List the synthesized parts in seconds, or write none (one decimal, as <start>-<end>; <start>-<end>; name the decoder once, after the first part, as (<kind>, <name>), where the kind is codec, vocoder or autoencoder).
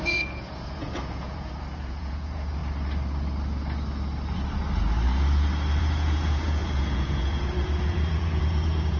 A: 0.0-2.6 (vocoder, Vocos); 5.8-9.0